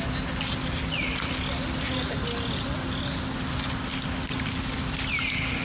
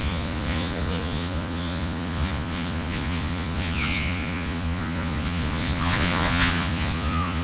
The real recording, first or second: first